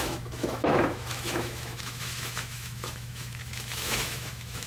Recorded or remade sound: remade